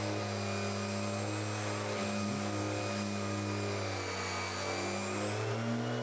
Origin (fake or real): real